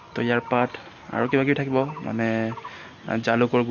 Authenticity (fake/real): real